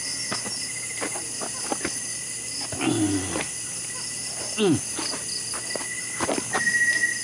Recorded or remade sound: recorded